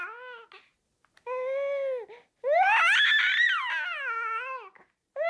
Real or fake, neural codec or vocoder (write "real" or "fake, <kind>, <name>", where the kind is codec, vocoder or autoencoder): real